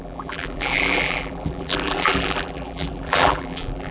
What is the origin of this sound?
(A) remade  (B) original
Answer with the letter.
A